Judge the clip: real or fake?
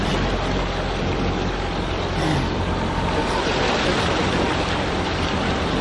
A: real